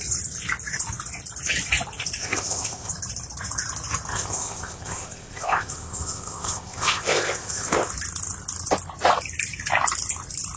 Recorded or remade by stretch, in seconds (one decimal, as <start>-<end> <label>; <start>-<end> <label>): 0.0-2.2 recorded; 2.2-2.9 remade; 2.9-4.1 recorded; 4.1-7.9 remade; 7.9-10.6 recorded

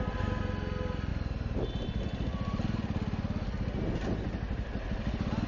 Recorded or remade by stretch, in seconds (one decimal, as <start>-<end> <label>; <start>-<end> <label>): 0.0-5.5 recorded

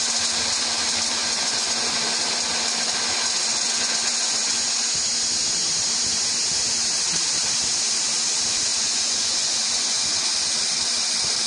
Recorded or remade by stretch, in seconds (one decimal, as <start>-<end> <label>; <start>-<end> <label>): 0.0-1.2 recorded; 1.2-2.0 remade; 2.0-3.5 recorded; 3.5-4.8 remade; 4.8-8.7 recorded; 8.7-10.2 remade; 10.2-11.5 recorded

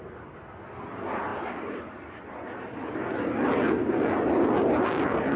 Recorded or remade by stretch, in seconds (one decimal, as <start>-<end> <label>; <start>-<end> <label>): 0.0-5.4 recorded

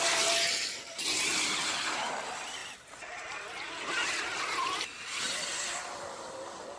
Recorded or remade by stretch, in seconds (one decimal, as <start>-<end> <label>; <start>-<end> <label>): 0.0-6.8 recorded

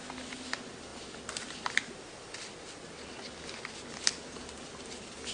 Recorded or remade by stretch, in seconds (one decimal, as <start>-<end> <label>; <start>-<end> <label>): 0.0-5.3 recorded

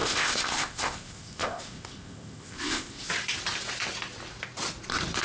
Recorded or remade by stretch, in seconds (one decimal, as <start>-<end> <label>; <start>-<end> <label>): 0.0-3.1 remade; 3.1-5.2 recorded